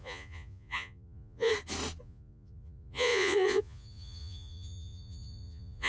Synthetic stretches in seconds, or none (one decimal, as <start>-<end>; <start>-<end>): 0.0-1.5; 2.0-5.9